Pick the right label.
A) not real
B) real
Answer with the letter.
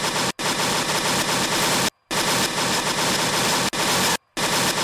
B